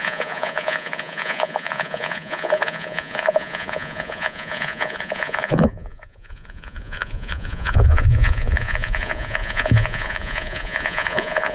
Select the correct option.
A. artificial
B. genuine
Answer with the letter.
A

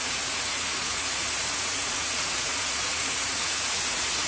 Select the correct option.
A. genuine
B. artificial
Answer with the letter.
B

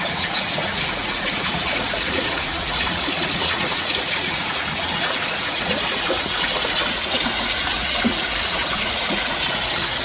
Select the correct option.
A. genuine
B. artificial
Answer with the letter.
B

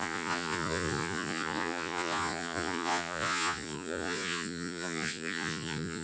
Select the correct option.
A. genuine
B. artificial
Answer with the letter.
B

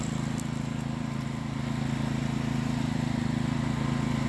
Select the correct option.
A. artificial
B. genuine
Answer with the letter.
B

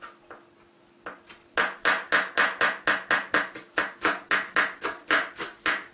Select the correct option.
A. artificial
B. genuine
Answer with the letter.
B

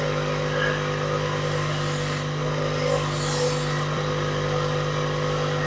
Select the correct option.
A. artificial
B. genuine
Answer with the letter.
B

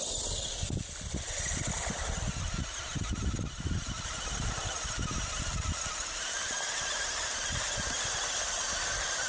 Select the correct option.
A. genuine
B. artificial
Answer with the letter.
A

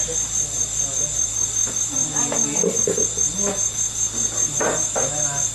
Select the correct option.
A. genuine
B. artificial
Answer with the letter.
A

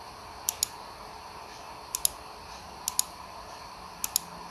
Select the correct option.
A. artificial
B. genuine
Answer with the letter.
B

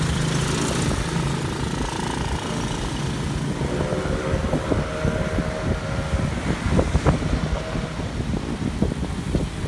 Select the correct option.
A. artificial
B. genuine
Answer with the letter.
B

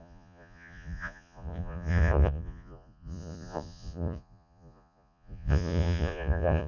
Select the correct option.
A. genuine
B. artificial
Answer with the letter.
B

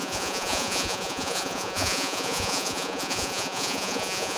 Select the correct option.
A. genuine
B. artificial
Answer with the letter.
B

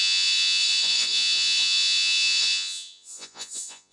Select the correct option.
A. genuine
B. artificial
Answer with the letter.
B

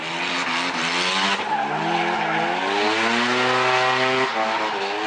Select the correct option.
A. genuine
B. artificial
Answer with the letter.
A